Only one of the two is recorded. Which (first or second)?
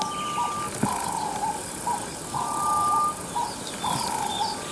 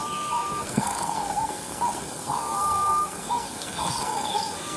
first